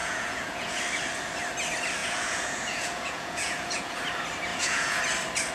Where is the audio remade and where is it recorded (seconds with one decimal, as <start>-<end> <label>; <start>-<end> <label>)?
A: 0.0-0.8 remade; 0.8-2.0 recorded; 2.0-4.0 remade; 4.0-4.5 recorded; 4.5-5.0 remade; 5.0-5.5 recorded